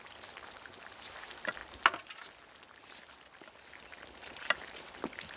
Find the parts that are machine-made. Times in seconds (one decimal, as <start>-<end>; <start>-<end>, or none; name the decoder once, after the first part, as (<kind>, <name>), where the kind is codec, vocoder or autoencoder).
none